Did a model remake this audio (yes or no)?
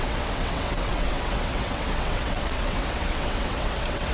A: yes